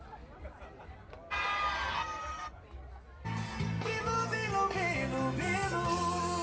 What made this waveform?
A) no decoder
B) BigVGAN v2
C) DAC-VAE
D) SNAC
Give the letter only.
A